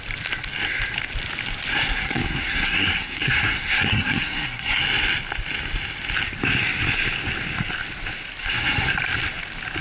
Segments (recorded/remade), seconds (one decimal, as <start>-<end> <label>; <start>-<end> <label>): 0.0-1.7 recorded; 1.7-4.8 remade; 4.8-8.4 recorded; 8.4-8.9 remade; 8.9-9.8 recorded